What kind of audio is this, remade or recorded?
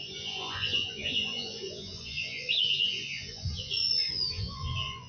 remade